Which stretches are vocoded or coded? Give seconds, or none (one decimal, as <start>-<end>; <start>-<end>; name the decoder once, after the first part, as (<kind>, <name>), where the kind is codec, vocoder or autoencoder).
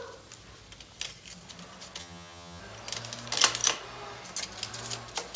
2.0-2.6 (vocoder, HiFi-GAN)